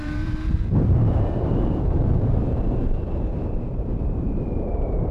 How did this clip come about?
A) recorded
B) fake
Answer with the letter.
B